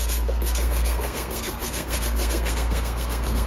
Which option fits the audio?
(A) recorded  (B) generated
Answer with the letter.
B